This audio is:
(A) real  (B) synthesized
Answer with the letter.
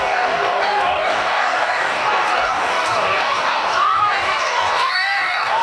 B